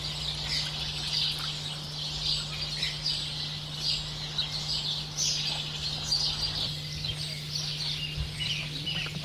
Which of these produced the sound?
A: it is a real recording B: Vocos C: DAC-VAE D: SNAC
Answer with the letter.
A